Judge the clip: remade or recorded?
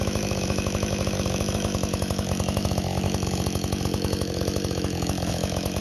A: remade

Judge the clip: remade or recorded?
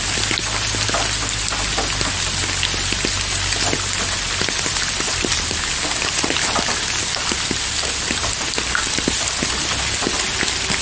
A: recorded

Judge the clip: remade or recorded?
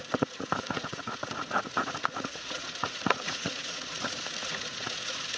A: remade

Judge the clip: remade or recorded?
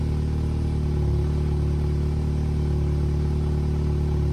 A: recorded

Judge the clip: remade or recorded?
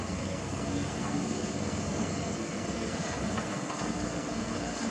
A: remade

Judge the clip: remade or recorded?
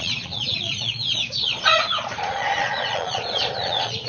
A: remade